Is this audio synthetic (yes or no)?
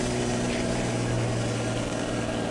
no